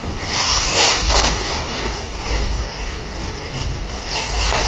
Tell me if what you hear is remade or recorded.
remade